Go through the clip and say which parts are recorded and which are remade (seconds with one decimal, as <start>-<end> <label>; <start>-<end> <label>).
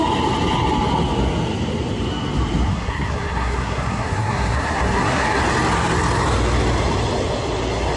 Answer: 0.0-2.7 recorded; 2.7-5.4 remade; 5.4-8.0 recorded